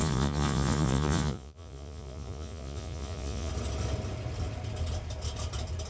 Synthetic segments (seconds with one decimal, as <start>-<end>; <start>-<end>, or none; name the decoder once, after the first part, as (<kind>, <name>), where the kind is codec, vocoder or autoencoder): 0.0-3.5 (vocoder, Vocos)